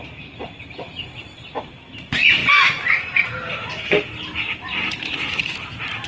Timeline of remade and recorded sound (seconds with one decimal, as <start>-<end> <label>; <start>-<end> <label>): 0.0-2.4 remade; 2.4-6.1 recorded